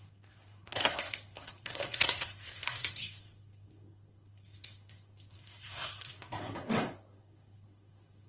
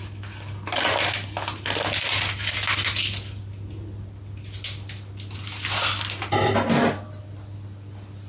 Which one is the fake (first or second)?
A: first